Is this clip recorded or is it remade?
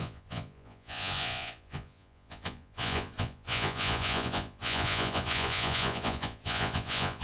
remade